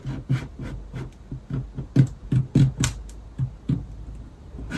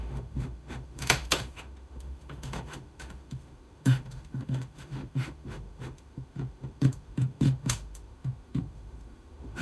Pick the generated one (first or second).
second